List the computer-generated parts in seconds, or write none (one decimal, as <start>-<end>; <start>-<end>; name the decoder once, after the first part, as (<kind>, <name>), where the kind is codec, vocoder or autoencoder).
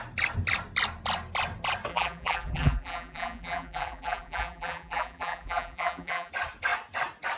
1.9-6.3 (vocoder, BigVGAN v2)